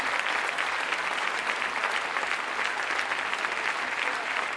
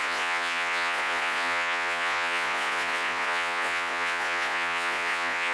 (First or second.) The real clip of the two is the first